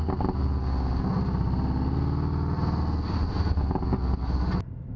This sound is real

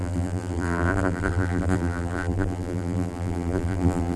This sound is fake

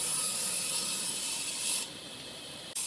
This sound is fake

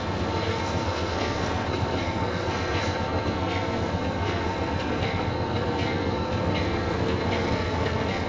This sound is fake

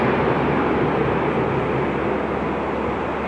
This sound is real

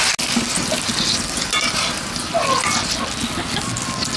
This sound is real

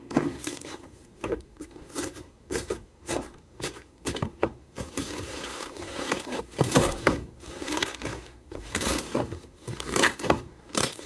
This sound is fake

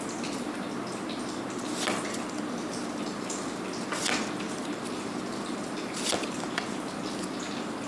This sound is real